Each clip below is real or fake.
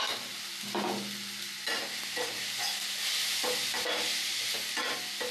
fake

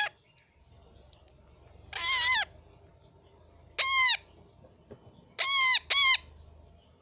real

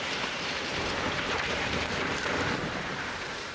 fake